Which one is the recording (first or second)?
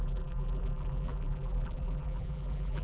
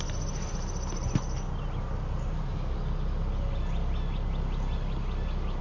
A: second